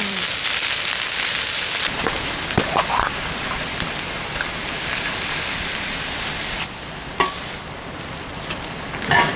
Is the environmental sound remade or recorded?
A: remade